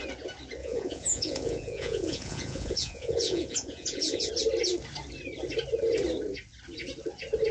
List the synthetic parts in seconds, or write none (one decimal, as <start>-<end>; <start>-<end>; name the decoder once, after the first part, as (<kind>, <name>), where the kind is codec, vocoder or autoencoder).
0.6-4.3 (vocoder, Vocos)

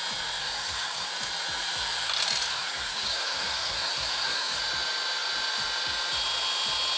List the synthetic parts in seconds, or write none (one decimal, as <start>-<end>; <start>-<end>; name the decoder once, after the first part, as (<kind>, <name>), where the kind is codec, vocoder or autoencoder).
0.4-1.1 (codec, SNAC); 2.5-4.6

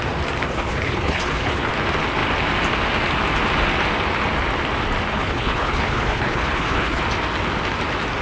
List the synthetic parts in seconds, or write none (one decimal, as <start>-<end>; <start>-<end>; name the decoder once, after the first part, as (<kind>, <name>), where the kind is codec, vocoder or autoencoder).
0.5-1.7 (codec, HILCodec); 5.1-7.0

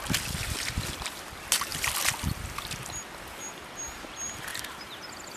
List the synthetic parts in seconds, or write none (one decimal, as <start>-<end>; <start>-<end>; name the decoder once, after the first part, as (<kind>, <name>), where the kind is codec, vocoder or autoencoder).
4.5-5.0 (vocoder, BigVGAN v2)

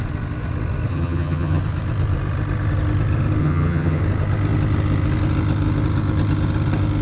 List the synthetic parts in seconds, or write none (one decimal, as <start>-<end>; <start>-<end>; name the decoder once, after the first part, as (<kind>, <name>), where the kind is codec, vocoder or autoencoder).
0.9-1.6 (vocoder, HiFi-GAN); 3.4-4.0

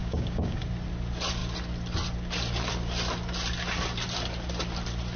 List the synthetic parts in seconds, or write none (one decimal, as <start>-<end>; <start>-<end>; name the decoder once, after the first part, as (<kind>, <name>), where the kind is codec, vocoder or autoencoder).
0.0-0.6 (codec, DAC)

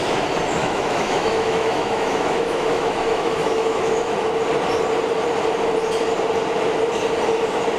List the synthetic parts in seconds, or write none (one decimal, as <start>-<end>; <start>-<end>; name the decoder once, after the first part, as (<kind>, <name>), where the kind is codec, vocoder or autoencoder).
0.6-4.3 (autoencoder, DAC-VAE)

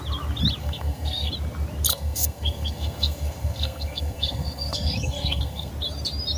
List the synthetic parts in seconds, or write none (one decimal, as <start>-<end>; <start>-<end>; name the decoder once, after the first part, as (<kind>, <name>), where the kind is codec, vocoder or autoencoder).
0.6-1.3 (codec, SNAC); 1.9-5.7